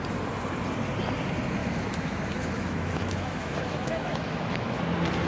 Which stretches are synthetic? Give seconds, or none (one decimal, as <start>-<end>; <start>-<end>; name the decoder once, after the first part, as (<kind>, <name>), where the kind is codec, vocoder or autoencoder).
1.6-4.8 (autoencoder, DAC-VAE)